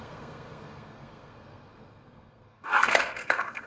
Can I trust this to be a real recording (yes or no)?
no